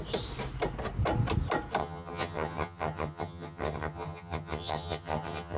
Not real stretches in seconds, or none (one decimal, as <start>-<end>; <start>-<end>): 1.8-5.6